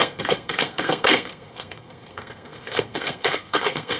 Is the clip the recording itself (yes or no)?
no